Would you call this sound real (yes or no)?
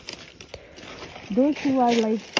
yes